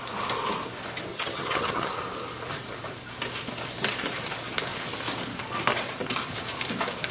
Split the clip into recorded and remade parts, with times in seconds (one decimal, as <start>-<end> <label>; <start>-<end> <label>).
0.0-1.1 recorded; 1.1-1.9 remade; 1.9-7.1 recorded

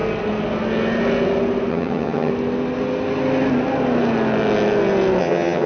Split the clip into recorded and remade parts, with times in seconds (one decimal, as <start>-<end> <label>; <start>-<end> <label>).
0.0-1.7 recorded; 1.7-2.3 remade; 2.3-5.2 recorded; 5.2-5.7 remade